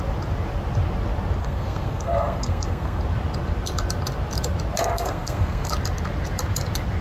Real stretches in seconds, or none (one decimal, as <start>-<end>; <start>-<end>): 0.0-1.4; 3.0-4.8; 5.7-7.0